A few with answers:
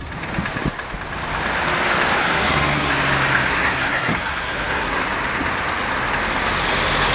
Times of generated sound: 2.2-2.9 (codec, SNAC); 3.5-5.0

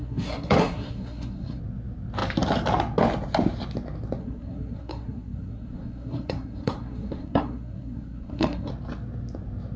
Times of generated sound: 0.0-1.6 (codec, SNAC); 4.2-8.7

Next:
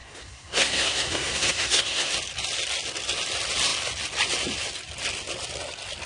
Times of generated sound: 0.0-2.1 (codec, SNAC)

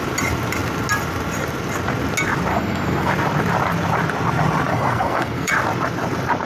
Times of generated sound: 2.5-3.1 (codec, SNAC); 4.7-5.5